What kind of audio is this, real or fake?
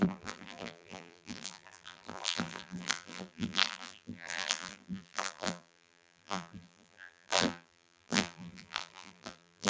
fake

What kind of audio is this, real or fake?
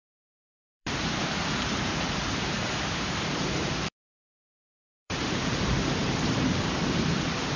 fake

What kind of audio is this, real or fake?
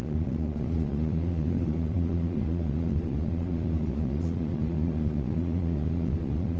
fake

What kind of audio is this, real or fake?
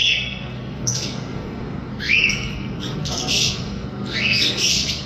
fake